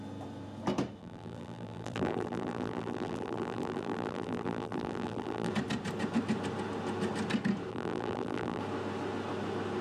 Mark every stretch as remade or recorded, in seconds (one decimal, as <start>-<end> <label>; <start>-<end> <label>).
0.0-1.0 recorded; 1.0-5.5 remade; 5.5-7.7 recorded; 7.7-8.6 remade; 8.6-9.8 recorded